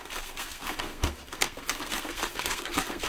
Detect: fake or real fake